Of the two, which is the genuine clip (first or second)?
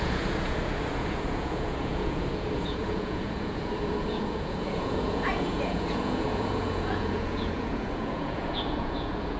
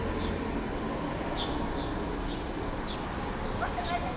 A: second